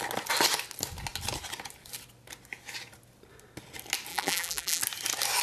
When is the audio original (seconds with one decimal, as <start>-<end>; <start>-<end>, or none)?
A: 0.0-4.1; 4.8-5.4